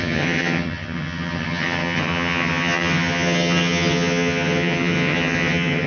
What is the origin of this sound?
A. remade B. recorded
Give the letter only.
A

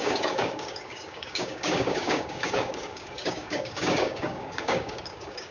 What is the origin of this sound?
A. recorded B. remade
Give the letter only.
B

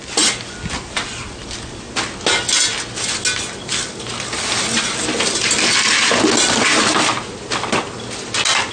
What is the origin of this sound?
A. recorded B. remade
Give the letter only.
A